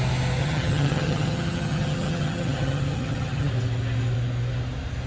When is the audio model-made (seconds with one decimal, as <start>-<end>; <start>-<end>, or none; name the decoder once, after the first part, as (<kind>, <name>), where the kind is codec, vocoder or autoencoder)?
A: 0.4-3.5 (vocoder, HiFi-GAN)